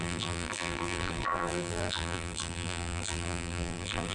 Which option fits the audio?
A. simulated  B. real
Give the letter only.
A